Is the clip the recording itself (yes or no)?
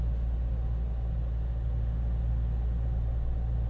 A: yes